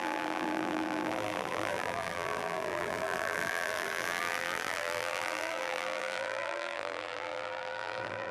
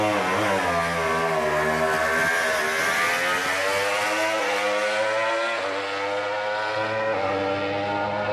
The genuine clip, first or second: second